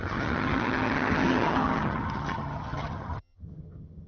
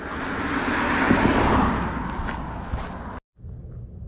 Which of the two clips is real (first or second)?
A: second